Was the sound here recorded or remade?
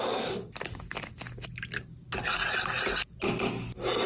recorded